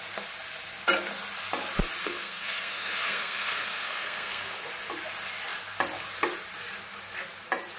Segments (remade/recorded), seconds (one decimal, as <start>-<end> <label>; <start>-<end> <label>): 0.0-2.0 recorded; 2.0-4.7 remade; 4.7-7.8 recorded